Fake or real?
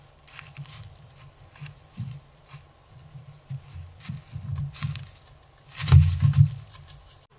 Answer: real